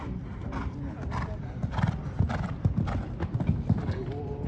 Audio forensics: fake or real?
real